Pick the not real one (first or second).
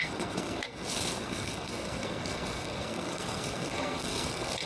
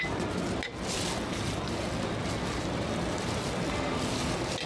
first